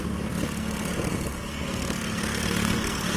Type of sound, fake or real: fake